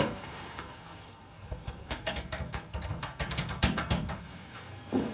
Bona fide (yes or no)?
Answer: no